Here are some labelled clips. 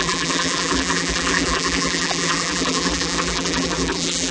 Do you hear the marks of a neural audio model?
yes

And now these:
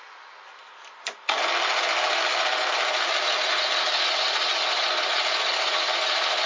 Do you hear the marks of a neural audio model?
no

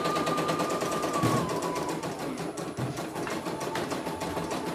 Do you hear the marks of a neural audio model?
no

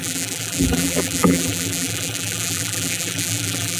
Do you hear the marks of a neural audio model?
yes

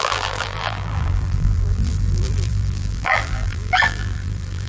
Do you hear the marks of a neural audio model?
yes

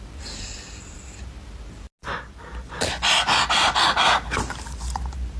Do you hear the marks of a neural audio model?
no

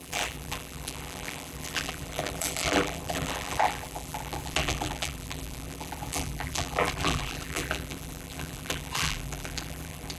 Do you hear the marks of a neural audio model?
yes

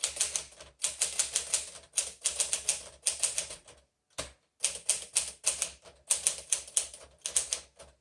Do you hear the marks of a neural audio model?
no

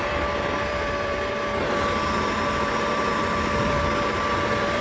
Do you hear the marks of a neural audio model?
yes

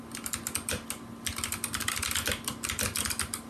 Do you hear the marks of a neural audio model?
no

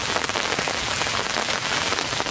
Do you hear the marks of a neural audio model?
yes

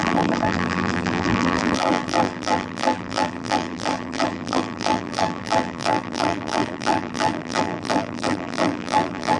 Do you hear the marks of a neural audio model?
yes